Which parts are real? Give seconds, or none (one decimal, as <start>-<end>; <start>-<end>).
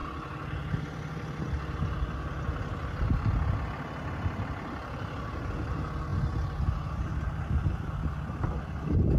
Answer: 0.0-9.2